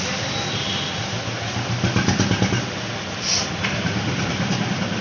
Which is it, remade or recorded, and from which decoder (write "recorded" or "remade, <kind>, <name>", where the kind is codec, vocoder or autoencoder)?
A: recorded